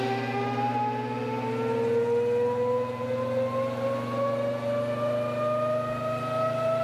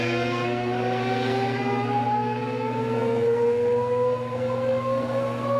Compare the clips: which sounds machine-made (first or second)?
second